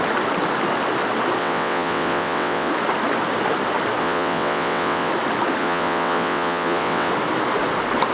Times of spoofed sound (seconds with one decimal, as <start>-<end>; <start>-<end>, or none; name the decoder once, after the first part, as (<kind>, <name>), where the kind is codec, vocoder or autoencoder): 1.4-2.7 (vocoder, WaveNeXt); 4.0-5.1; 5.6-7.1